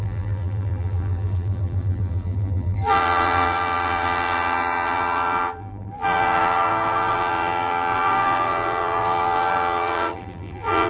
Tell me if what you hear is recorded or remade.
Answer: remade